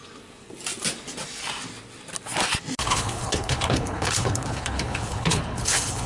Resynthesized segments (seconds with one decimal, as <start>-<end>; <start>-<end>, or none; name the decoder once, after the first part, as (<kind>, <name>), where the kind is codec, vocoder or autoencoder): 2.8-6.1 (codec, HILCodec)